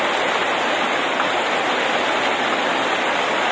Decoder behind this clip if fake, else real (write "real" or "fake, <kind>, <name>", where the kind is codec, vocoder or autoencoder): real